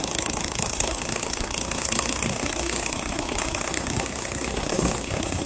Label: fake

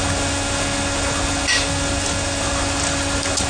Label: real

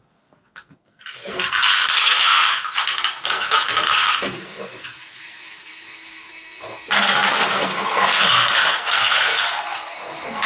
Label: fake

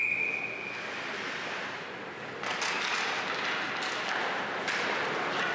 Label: real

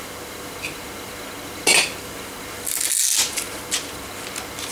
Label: real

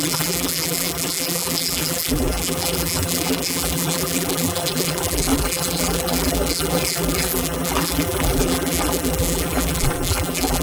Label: fake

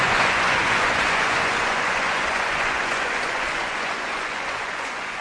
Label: fake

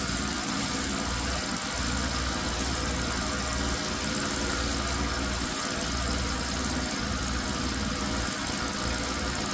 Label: real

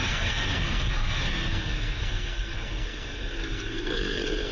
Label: fake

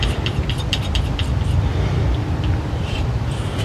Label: fake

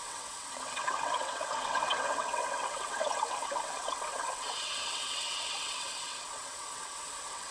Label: fake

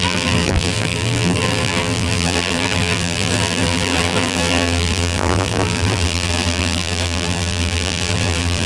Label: fake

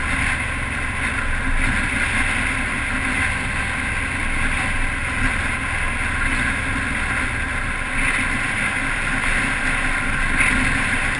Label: real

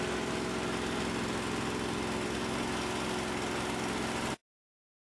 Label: real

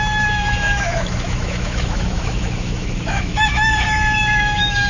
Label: fake